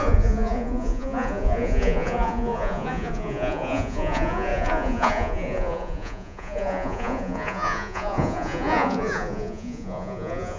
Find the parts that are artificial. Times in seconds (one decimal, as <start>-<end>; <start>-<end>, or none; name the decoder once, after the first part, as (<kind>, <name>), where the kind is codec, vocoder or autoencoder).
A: 0.0-10.6 (vocoder, Vocos)